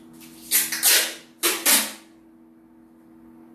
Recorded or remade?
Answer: recorded